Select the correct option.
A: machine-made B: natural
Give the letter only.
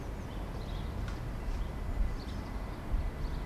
B